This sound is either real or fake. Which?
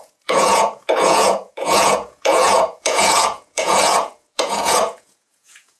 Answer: fake